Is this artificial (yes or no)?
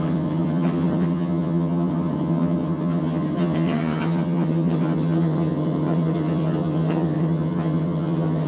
yes